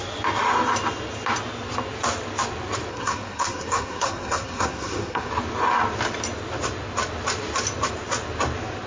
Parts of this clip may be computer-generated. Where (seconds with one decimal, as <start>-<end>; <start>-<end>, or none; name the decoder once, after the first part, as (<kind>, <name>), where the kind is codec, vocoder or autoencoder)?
2.9-5.3 (codec, SNAC)